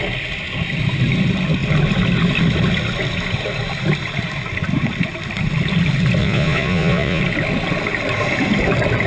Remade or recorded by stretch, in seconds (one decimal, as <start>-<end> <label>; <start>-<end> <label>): 0.0-6.2 recorded; 6.2-7.2 remade; 7.2-9.1 recorded